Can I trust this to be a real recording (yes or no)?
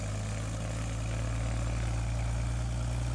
yes